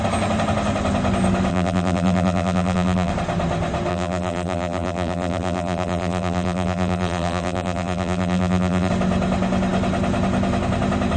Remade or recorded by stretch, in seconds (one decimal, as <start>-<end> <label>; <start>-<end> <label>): 0.0-1.5 recorded; 1.5-3.1 remade; 3.1-3.9 recorded; 3.9-8.9 remade; 8.9-11.2 recorded